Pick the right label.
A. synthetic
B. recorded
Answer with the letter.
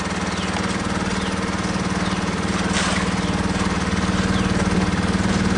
B